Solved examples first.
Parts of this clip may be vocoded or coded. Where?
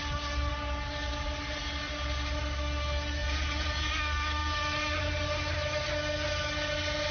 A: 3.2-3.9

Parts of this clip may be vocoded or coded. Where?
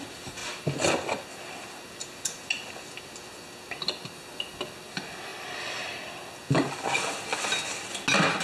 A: none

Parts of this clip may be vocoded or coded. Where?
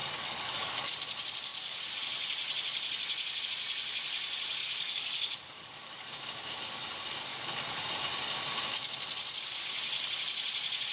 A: 0.0-0.9; 4.6-6.1; 7.3-7.8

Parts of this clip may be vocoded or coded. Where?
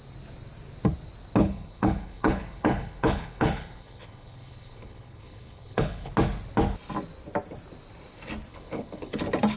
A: 1.4-6.1; 8.5-9.2